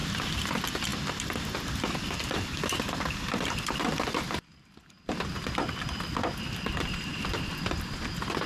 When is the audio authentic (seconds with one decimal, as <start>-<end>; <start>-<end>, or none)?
none